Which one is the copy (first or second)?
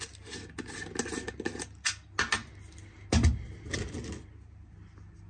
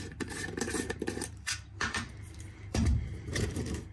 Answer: second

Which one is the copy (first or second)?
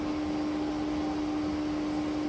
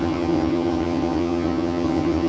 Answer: second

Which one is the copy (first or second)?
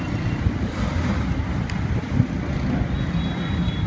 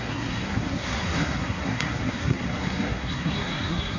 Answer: second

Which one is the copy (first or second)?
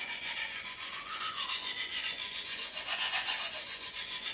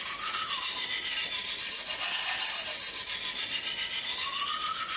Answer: first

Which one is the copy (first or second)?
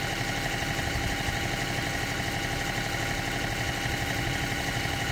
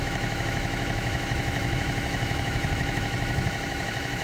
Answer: second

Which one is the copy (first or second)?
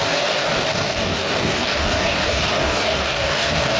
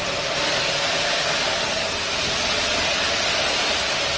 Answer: first